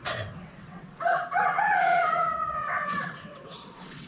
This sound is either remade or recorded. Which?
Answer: remade